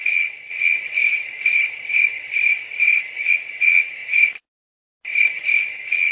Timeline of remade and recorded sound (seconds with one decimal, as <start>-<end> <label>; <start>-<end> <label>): 0.0-1.0 remade; 1.0-3.3 recorded; 3.3-4.0 remade; 4.0-5.6 recorded; 5.6-6.1 remade